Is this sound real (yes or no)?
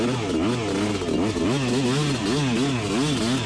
yes